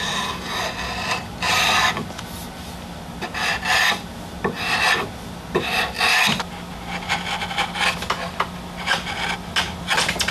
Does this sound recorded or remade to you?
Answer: recorded